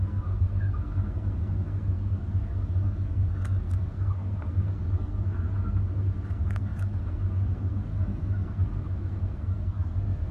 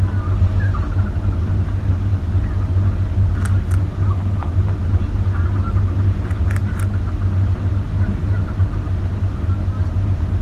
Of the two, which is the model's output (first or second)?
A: first